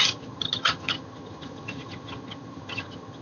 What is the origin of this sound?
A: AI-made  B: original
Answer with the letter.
A